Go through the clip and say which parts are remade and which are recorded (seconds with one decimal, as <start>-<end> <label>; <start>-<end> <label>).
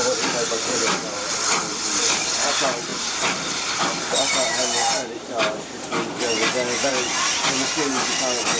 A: 0.0-8.6 recorded